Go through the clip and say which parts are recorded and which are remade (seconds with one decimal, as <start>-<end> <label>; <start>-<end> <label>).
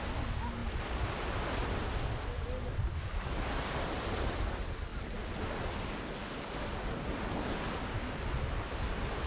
0.0-9.3 recorded